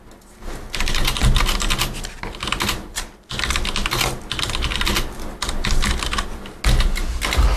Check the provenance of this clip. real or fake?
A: real